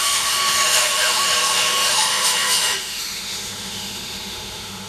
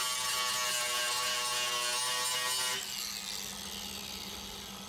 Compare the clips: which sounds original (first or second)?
second